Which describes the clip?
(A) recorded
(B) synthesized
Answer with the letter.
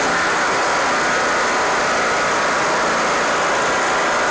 A